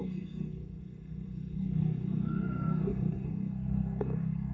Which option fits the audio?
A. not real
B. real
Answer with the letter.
A